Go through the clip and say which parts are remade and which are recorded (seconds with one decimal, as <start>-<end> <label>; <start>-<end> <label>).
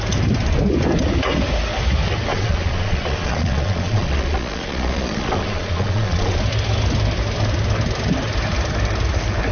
0.0-2.3 recorded; 2.3-6.4 remade; 6.4-9.5 recorded